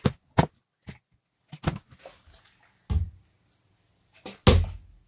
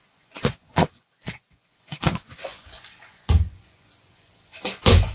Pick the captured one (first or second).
first